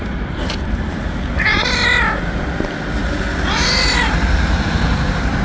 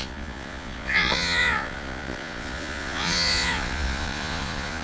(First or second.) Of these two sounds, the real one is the first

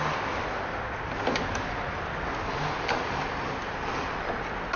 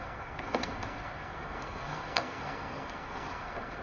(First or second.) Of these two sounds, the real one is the first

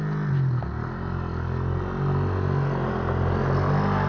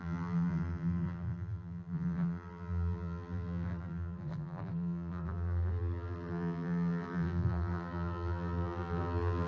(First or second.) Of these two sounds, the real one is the first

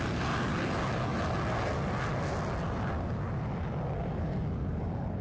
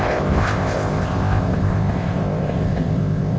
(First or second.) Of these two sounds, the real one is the first